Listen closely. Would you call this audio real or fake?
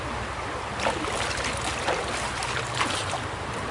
fake